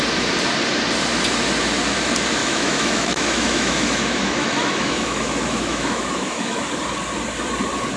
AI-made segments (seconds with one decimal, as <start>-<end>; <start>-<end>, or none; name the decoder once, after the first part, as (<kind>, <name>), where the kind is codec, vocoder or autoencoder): 2.4-6.6 (autoencoder, DAC-VAE)